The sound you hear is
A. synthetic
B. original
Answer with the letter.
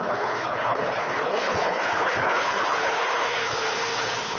A